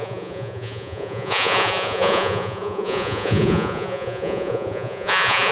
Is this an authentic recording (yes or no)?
no